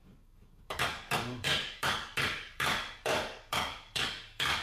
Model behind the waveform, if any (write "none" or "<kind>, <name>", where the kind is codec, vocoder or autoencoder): codec, DAC